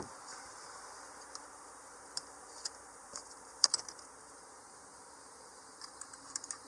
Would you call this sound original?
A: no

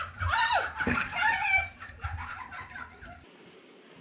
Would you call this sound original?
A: no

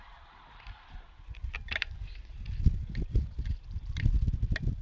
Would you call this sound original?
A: no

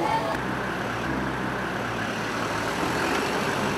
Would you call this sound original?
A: yes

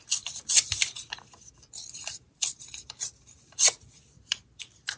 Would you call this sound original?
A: no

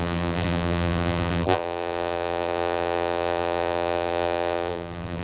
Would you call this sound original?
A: no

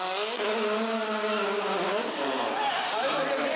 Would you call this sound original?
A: yes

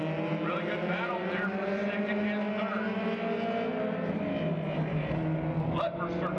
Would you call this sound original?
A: yes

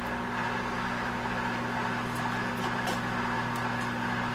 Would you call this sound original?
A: yes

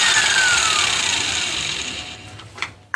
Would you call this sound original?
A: no